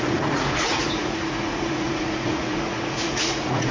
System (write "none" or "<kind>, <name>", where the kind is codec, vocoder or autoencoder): vocoder, Vocos